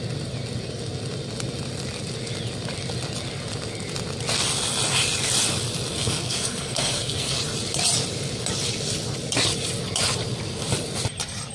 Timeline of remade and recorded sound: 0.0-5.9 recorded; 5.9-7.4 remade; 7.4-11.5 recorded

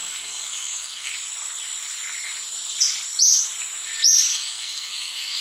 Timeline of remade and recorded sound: 0.0-1.1 remade; 1.1-4.3 recorded; 4.3-5.4 remade

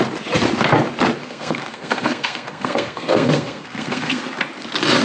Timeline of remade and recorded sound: 0.0-1.2 recorded; 1.2-4.2 remade; 4.2-5.0 recorded

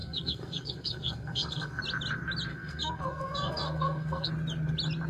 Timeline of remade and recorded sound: 0.0-1.8 remade; 1.8-2.5 recorded; 2.5-4.3 remade; 4.3-5.1 recorded

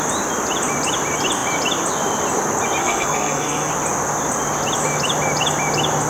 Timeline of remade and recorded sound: 0.0-2.8 recorded; 2.8-3.7 remade; 3.7-6.1 recorded